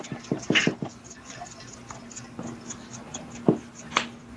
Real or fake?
real